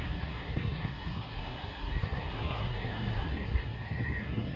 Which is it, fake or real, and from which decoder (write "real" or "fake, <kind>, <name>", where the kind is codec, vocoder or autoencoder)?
fake, codec, SNAC